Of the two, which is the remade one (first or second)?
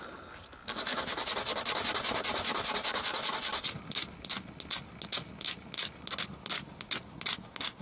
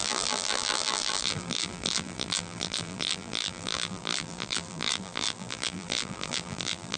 second